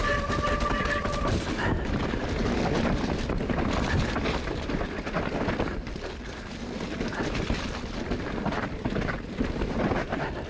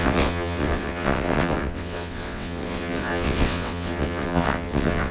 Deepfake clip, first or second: second